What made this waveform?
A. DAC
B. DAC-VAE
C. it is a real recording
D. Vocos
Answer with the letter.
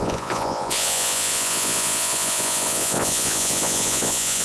D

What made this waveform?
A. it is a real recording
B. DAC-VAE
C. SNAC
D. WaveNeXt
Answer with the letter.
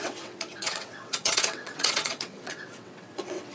D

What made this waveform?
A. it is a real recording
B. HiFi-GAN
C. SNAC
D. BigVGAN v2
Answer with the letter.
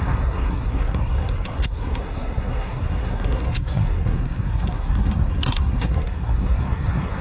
C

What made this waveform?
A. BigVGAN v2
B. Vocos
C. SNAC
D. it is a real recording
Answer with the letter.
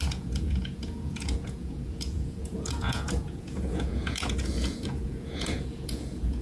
B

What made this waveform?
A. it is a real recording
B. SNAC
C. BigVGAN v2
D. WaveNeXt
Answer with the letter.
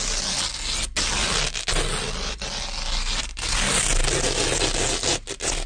A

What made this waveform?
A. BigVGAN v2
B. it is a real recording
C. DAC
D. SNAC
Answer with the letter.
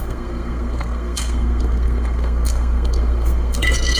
D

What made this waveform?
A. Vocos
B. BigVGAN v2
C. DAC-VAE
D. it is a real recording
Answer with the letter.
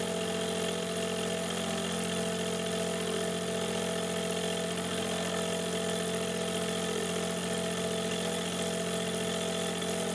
D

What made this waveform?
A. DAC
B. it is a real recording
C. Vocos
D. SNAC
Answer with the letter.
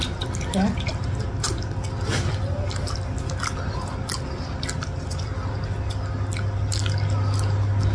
B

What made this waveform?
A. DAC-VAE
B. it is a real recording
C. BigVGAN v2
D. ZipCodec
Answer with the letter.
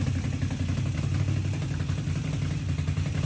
B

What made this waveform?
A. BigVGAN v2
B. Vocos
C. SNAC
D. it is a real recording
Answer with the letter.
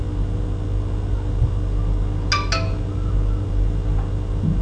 D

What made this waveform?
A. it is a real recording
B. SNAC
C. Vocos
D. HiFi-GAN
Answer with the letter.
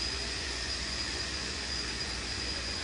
C